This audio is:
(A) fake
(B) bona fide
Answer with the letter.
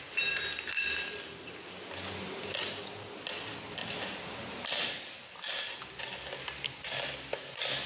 B